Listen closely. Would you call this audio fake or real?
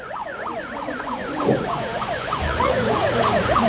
fake